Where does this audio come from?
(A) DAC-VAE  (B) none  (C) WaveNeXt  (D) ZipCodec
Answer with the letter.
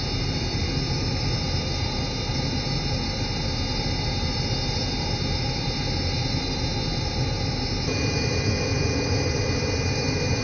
B